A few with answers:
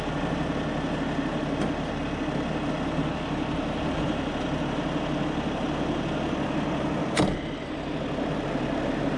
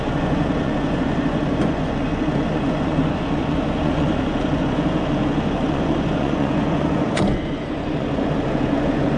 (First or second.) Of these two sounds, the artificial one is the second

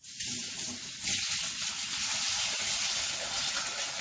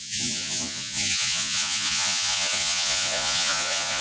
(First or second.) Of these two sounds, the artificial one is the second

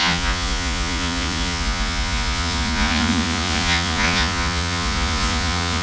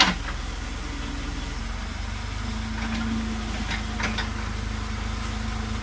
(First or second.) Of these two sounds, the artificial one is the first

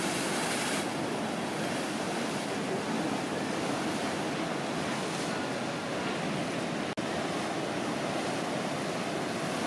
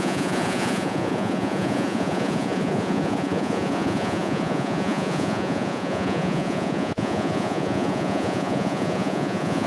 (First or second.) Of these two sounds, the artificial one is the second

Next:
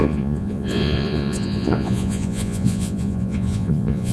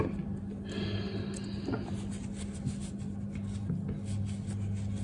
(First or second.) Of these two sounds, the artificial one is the first